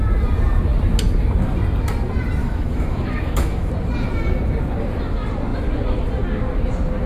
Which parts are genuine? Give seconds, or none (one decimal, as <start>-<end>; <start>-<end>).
0.0-2.4; 3.7-7.1